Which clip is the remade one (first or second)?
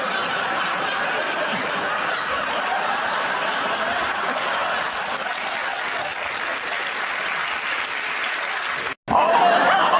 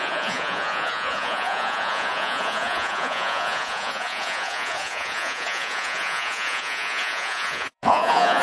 second